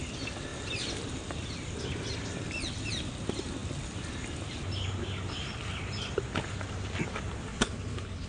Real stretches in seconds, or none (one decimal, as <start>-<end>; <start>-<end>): 0.0-7.5

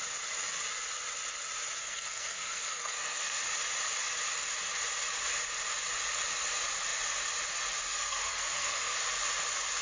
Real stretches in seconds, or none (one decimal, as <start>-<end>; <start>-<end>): 0.0-1.8; 3.4-7.9; 9.0-9.8

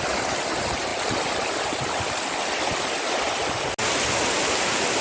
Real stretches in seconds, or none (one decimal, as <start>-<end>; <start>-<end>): 0.0-5.0

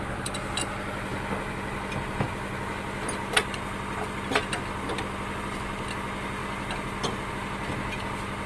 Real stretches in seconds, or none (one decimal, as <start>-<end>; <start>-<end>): 0.0-8.5

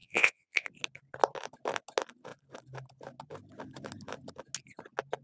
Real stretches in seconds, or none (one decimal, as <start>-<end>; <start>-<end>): 0.7-5.2

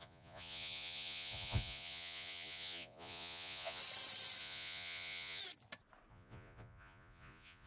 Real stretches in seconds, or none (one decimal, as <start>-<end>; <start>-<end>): 3.8-4.4; 5.4-6.1

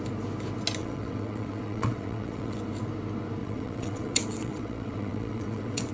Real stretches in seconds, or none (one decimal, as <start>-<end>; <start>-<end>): 0.0-0.8; 2.6-3.4

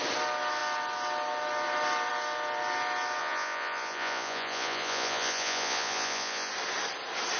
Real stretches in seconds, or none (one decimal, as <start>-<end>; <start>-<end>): 0.0-3.2; 6.5-7.4